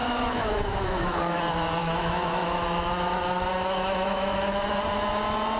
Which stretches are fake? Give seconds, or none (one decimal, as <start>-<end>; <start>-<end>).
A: 0.0-1.4; 1.8-4.7